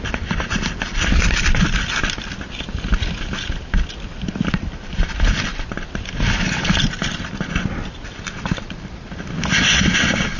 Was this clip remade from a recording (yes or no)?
no